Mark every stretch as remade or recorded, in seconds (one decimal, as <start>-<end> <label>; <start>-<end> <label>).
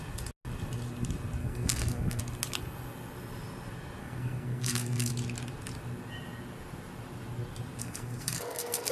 0.0-1.4 recorded; 1.4-2.2 remade; 2.2-4.0 recorded; 4.0-5.1 remade; 5.1-7.8 recorded; 7.8-8.9 remade